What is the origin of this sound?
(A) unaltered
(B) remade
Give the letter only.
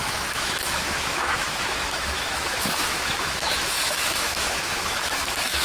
B